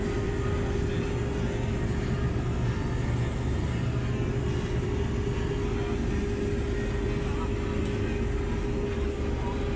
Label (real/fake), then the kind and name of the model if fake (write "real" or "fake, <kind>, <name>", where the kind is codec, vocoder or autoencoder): real